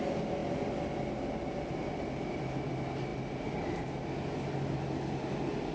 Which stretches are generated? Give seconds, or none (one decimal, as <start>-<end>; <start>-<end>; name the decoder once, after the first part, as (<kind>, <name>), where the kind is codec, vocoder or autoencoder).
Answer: none